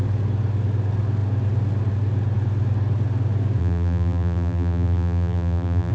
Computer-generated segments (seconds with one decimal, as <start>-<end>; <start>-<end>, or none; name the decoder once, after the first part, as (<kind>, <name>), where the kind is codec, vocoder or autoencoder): 3.6-5.9 (vocoder, BigVGAN v2)